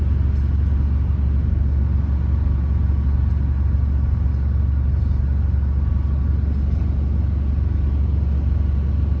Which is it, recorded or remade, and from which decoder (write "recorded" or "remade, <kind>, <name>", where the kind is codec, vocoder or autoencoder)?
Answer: recorded